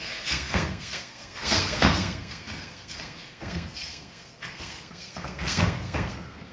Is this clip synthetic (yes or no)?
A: yes